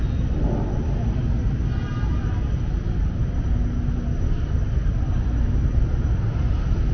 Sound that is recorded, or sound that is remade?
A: recorded